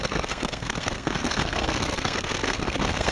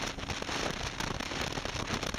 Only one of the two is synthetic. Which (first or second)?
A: first